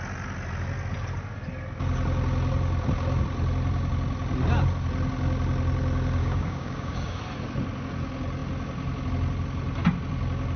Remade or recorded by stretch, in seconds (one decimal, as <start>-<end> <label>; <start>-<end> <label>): 0.0-6.2 recorded; 6.2-7.2 remade; 7.2-10.6 recorded